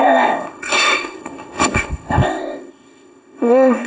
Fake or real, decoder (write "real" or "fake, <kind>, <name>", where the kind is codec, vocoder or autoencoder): fake, codec, ZipCodec